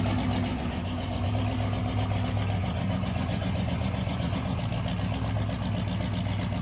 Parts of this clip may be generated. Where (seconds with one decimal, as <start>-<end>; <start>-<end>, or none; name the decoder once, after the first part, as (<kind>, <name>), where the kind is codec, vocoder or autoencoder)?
0.5-1.3 (vocoder, Vocos); 2.6-4.6

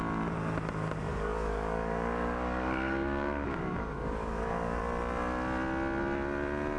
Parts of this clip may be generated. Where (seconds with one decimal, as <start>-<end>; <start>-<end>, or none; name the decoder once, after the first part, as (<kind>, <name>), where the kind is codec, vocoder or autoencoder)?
1.1-4.8 (codec, DAC)

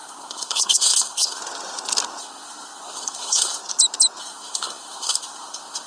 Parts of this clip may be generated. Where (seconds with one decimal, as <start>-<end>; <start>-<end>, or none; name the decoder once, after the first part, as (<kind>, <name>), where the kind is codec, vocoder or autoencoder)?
0.0-1.4 (codec, SNAC); 2.2-3.6; 4.2-5.9

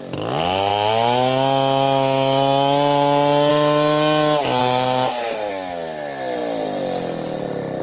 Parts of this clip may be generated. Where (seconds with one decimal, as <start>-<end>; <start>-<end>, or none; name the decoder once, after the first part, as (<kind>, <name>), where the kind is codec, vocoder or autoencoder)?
4.6-5.5 (codec, SNAC)

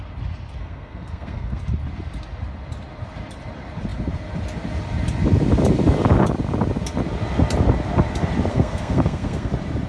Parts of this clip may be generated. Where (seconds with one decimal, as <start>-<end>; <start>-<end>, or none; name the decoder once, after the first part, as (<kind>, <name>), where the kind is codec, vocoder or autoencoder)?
0.6-1.6 (codec, SNAC); 8.5-9.5

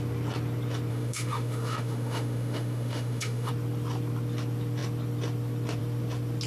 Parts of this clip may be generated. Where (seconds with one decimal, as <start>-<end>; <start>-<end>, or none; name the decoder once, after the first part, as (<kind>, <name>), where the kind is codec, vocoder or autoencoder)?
0.9-3.5 (autoencoder, DAC-VAE)

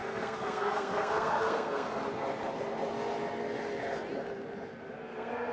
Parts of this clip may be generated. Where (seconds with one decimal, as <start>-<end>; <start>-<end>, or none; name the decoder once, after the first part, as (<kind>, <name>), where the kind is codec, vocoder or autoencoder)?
0.0-2.0 (codec, SNAC); 4.9-5.5

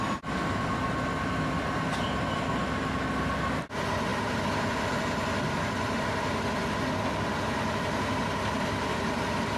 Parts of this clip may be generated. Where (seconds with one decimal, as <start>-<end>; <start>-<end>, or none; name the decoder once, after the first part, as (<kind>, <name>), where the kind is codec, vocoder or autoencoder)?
none